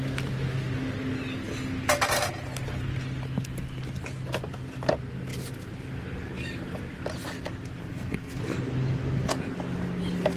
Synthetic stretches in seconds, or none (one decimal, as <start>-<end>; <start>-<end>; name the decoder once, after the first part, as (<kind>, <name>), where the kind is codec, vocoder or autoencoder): 7.8-8.4 (codec, SNAC)